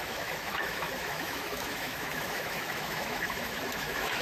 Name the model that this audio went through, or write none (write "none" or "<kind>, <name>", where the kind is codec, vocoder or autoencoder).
autoencoder, DAC-VAE